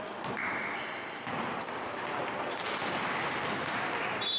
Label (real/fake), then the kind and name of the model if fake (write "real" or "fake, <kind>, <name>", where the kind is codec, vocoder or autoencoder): real